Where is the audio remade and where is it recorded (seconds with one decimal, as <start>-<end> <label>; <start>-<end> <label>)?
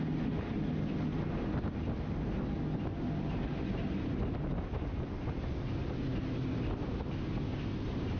0.0-8.2 recorded